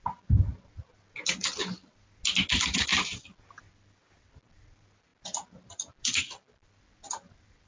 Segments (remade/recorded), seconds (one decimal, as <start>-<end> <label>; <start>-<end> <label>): 0.0-7.7 recorded